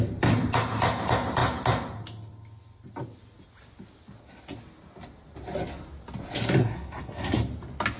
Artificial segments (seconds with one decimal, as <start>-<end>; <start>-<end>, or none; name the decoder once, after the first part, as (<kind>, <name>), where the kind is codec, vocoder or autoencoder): 6.6-7.4 (codec, SNAC)